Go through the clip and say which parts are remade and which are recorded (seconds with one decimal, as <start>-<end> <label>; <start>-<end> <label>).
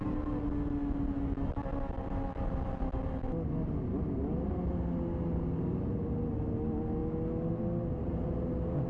0.0-8.9 recorded